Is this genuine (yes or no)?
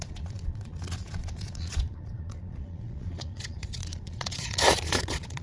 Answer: no